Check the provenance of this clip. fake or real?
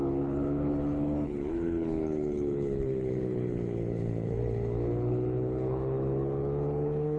fake